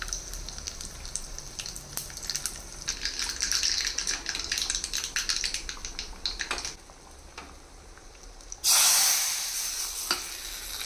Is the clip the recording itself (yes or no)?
yes